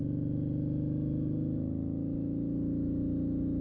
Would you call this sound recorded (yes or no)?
yes